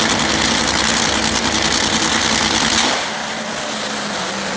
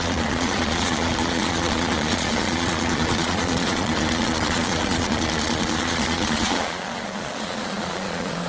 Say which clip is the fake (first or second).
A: second